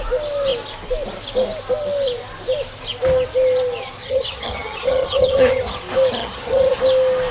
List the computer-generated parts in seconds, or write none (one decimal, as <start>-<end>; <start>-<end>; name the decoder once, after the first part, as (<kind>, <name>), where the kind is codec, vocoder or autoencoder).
4.0-5.8 (vocoder, HiFi-GAN); 6.2-6.8